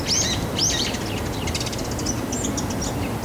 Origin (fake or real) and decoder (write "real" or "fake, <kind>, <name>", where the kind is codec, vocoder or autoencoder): real